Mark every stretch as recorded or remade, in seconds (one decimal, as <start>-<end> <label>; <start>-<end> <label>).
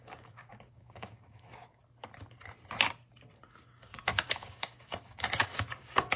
0.0-1.8 remade; 1.8-3.6 recorded; 3.6-6.2 remade